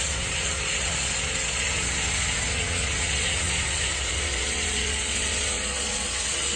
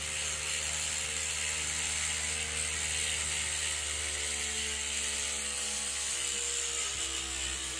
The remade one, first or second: first